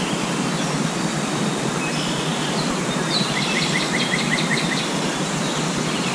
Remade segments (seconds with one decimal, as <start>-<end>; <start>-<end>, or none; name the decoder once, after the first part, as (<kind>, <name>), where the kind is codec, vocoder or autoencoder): 1.1-1.7 (vocoder, BigVGAN v2); 2.3-6.1